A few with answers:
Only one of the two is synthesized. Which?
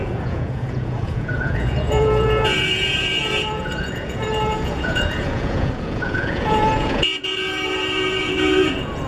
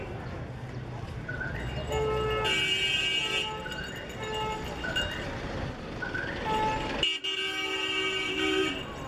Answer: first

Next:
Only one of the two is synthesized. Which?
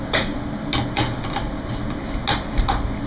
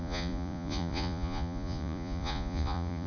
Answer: second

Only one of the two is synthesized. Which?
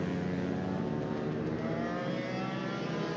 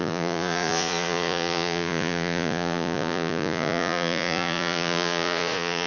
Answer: second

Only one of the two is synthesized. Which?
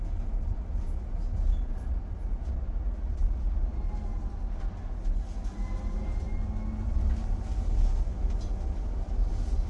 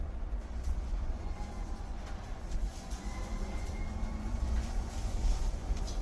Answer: second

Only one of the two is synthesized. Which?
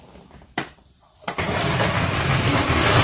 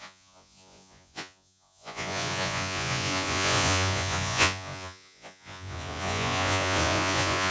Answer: second